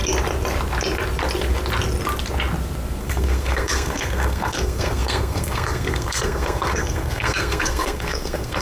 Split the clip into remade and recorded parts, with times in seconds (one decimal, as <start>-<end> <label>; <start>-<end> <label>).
0.0-3.0 recorded; 3.0-8.6 remade